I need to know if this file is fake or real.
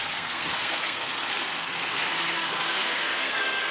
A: fake